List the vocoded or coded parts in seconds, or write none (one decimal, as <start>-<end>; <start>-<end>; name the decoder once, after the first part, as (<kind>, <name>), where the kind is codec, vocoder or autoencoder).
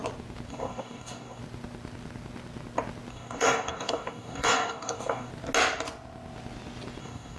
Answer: 0.5-1.4 (codec, DAC); 3.1-5.3; 7.0-7.4